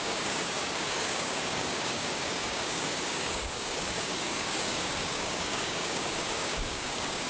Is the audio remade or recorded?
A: remade